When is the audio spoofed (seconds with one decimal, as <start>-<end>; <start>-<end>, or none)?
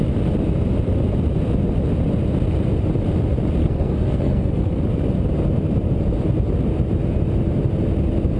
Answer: 3.6-4.8